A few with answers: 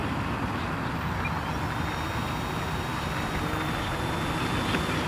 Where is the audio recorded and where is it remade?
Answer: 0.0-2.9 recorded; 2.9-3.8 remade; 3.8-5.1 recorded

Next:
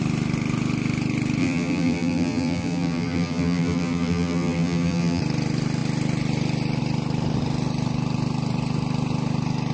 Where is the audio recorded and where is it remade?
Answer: 0.0-1.4 recorded; 1.4-5.2 remade; 5.2-9.7 recorded

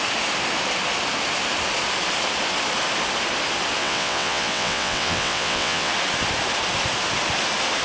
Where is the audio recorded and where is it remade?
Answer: 0.0-3.8 recorded; 3.8-5.9 remade; 5.9-7.8 recorded